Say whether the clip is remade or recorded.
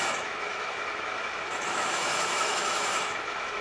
remade